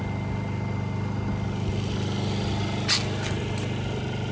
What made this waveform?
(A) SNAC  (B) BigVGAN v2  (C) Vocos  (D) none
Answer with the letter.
D